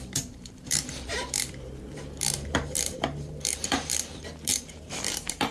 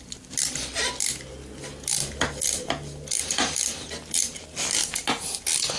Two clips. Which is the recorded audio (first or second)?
second